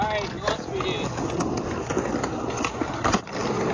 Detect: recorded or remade recorded